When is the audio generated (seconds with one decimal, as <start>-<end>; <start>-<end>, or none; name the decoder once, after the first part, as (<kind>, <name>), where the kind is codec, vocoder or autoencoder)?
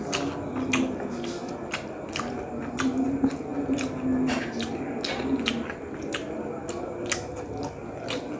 none